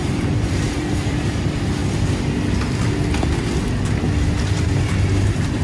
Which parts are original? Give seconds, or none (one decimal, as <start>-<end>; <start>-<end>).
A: 1.8-4.6